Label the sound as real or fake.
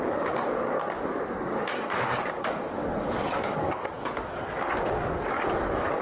fake